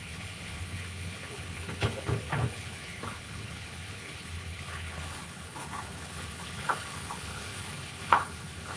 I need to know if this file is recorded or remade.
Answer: remade